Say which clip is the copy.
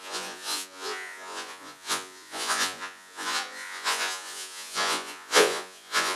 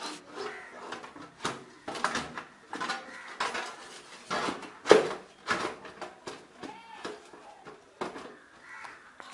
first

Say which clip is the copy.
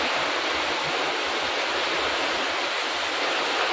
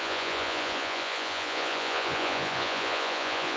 second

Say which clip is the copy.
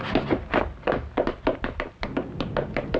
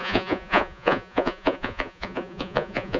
second